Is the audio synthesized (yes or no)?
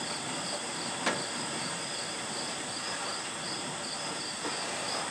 yes